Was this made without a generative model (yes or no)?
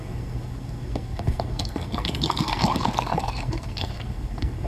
no